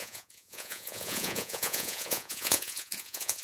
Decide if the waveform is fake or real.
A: fake